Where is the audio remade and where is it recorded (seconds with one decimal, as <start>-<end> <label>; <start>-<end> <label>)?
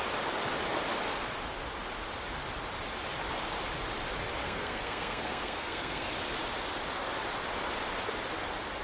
0.0-4.4 recorded; 4.4-6.1 remade; 6.1-8.8 recorded